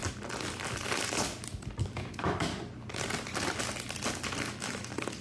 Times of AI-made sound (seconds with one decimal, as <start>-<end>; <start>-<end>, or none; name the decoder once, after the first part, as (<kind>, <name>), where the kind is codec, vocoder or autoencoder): 1.8-2.5 (autoencoder, DAC-VAE); 4.5-5.2